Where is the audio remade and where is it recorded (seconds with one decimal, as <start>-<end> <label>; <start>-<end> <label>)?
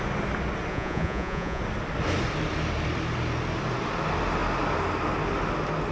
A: 0.0-0.7 recorded; 0.7-1.6 remade; 1.6-5.9 recorded